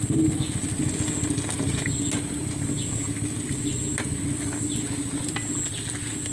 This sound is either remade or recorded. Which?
recorded